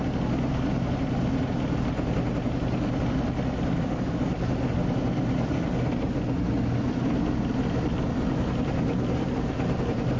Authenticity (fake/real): real